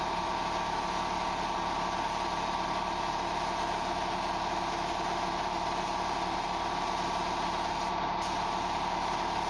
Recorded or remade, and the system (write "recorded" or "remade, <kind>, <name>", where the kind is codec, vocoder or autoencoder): recorded